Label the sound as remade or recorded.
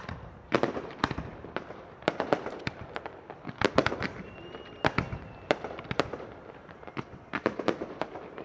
remade